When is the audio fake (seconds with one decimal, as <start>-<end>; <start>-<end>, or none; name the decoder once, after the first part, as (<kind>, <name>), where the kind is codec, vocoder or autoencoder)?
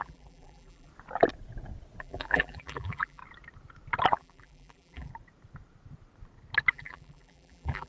0.0-0.9 (vocoder, BigVGAN v2); 2.0-3.2; 4.1-5.1; 6.7-7.9